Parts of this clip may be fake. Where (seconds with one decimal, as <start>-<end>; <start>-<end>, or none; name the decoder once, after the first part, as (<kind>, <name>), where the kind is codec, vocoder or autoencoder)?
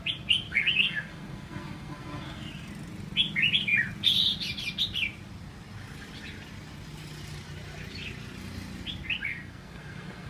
0.5-2.7 (codec, SNAC); 9.3-10.3